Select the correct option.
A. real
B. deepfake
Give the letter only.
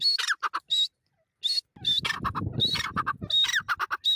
A